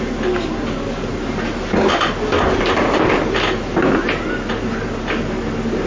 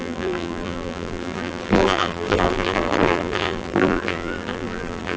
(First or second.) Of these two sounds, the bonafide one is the first